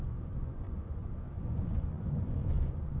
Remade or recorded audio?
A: remade